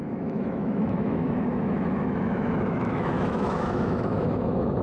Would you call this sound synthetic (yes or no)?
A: yes